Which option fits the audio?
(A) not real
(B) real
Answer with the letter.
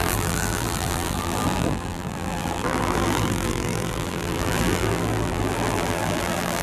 A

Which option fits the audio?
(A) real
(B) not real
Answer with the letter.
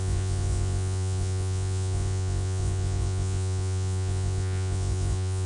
B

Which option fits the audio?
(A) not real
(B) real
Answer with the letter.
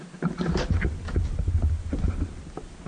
B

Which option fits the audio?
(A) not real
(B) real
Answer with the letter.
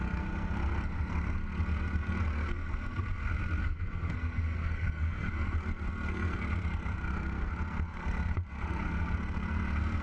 A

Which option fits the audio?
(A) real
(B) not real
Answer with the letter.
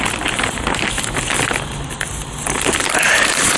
A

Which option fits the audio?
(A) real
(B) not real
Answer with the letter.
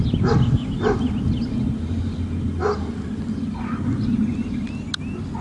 A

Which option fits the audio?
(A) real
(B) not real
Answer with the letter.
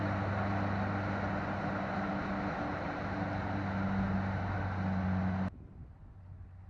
A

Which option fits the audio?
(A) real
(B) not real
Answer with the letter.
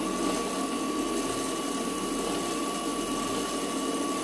A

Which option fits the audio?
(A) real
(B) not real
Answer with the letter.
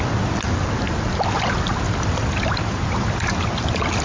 A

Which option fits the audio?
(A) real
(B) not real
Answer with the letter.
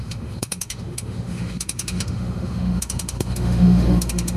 B